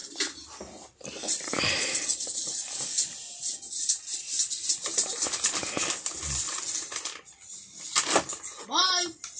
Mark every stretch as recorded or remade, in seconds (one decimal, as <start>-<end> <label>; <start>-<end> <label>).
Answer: 0.0-9.4 recorded